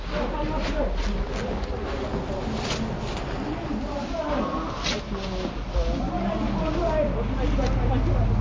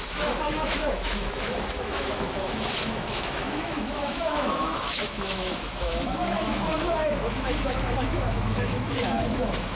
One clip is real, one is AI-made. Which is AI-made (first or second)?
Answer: second